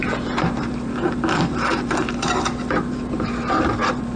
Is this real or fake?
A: fake